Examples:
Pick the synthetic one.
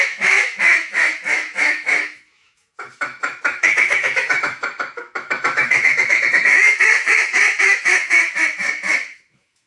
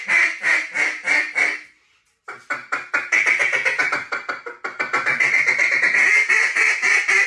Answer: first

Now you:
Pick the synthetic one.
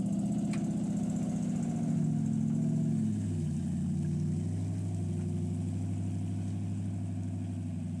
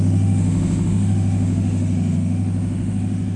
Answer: second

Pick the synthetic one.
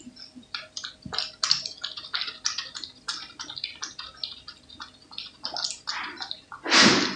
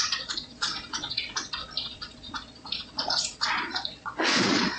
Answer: second